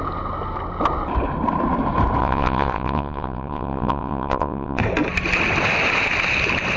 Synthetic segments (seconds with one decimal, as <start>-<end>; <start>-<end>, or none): 2.2-4.8